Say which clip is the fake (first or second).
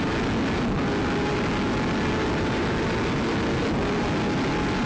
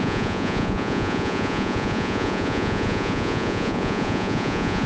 second